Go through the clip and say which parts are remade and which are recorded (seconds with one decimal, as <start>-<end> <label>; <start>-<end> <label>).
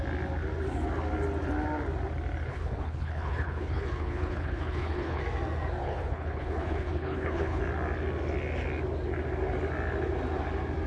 0.0-2.5 recorded; 2.5-5.2 remade; 5.2-5.8 recorded; 5.8-7.6 remade; 7.6-10.9 recorded